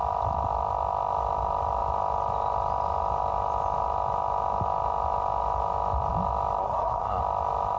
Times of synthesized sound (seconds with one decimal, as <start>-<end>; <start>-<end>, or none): 6.6-7.2